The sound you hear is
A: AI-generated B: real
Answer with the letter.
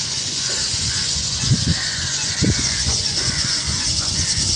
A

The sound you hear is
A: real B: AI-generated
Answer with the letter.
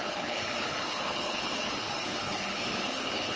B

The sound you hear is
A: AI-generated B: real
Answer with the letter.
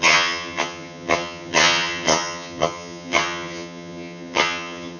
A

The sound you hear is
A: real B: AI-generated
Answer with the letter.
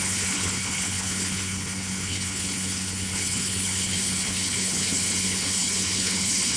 B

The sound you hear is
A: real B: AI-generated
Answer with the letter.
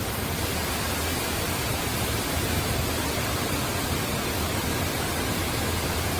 B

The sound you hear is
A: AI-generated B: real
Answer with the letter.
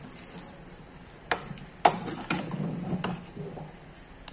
B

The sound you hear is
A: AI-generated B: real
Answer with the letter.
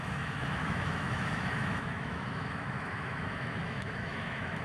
A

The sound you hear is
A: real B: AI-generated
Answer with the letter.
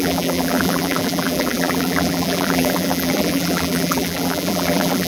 B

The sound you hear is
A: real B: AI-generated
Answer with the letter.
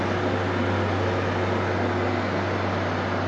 A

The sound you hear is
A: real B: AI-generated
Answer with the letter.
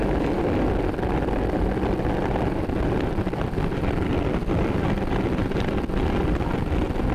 B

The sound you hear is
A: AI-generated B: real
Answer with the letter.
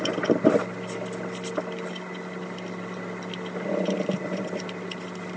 B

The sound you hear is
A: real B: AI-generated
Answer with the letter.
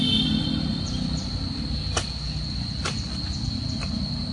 A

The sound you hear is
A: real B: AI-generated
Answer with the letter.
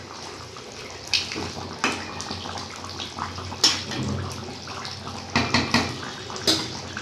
A